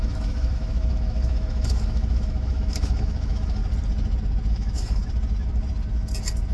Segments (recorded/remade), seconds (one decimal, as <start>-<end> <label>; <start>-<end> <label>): 0.0-3.6 remade; 3.6-4.5 recorded; 4.5-5.0 remade; 5.0-6.5 recorded